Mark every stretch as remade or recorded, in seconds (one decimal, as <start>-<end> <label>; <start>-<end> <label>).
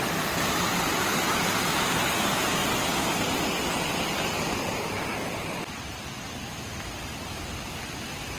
0.0-8.4 recorded